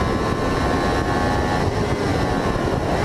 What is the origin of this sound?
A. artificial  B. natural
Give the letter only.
B